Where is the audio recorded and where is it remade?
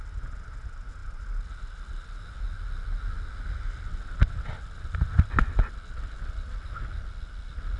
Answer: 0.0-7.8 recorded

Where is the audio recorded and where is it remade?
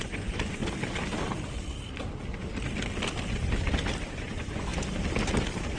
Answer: 0.0-0.6 remade; 0.6-4.1 recorded; 4.1-4.7 remade; 4.7-5.8 recorded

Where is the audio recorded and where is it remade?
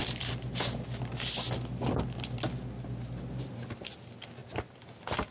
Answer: 0.0-5.3 recorded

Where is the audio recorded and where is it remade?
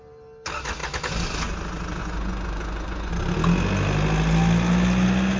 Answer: 0.0-2.0 recorded; 2.0-3.1 remade; 3.1-5.4 recorded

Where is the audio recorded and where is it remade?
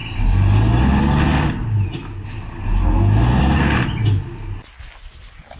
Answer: 0.0-3.4 recorded; 3.4-3.8 remade; 3.8-5.6 recorded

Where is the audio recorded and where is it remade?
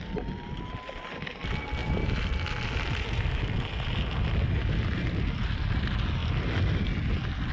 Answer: 0.0-7.5 recorded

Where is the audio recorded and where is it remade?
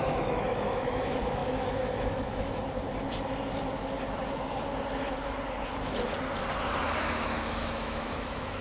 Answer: 0.0-2.5 remade; 2.5-7.0 recorded; 7.0-8.6 remade